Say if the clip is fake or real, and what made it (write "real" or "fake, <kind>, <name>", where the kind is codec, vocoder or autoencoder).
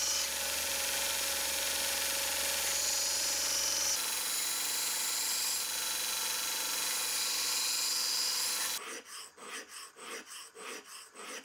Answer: real